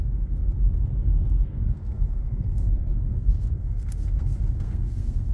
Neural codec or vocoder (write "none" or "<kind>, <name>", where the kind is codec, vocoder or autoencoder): codec, SNAC